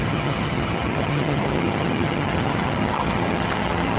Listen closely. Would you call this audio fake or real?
fake